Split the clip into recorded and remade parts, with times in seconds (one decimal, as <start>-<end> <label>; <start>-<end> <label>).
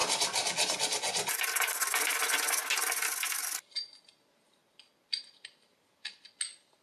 0.0-4.6 recorded; 4.6-5.2 remade; 5.2-6.8 recorded